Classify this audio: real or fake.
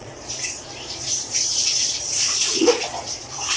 fake